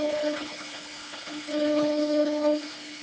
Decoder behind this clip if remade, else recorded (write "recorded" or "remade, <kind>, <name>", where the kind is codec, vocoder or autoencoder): remade, codec, HILCodec